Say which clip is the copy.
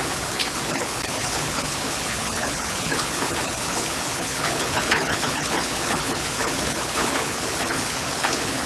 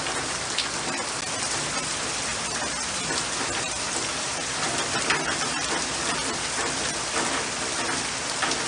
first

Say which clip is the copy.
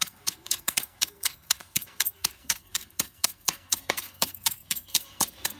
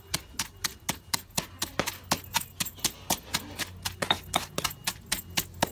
first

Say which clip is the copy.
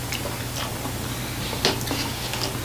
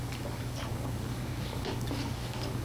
second